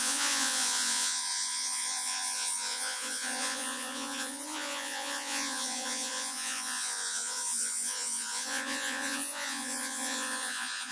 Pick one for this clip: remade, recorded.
remade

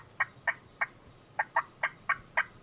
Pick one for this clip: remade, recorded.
recorded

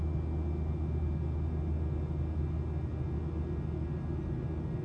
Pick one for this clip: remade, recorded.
recorded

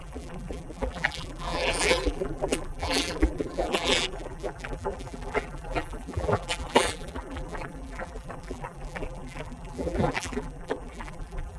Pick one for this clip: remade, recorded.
remade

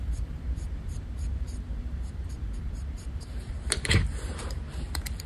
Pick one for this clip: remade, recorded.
remade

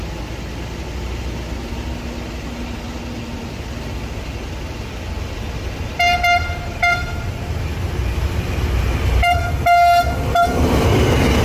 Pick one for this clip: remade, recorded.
recorded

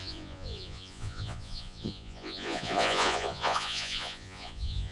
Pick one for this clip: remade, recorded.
remade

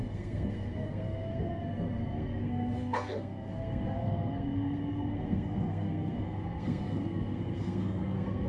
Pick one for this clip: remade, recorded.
remade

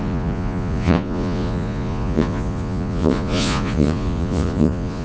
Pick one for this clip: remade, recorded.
remade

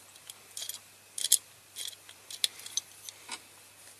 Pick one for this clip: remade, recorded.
recorded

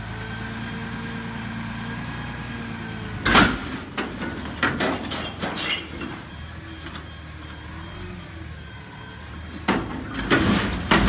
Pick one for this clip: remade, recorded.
recorded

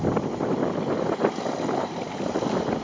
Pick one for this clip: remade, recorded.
recorded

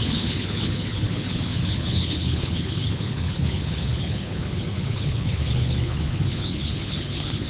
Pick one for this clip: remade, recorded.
remade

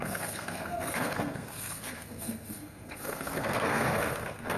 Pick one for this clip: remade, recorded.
remade